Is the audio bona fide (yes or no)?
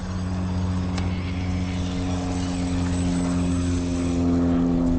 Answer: yes